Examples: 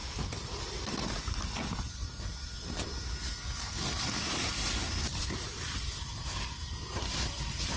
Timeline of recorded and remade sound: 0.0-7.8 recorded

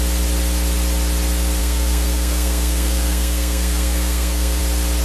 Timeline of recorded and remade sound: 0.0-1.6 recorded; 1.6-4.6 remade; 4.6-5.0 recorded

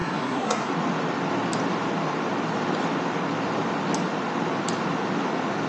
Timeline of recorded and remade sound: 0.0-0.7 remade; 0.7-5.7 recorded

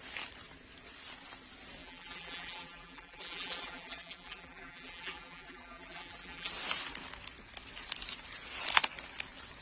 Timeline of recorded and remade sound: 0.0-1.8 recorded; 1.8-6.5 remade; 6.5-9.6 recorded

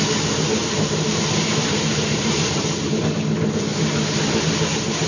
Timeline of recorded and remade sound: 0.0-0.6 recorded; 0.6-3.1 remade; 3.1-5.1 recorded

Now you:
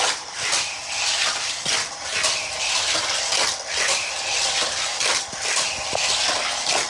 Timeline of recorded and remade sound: 0.0-6.9 recorded

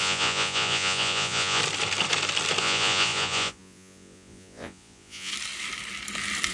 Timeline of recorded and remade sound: 0.0-1.6 remade; 1.6-2.6 recorded; 2.6-5.3 remade; 5.3-6.5 recorded

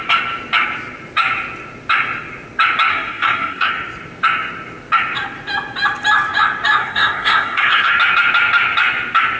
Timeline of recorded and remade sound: 0.0-2.9 recorded; 2.9-3.7 remade; 3.7-6.8 recorded; 6.8-7.9 remade; 7.9-9.4 recorded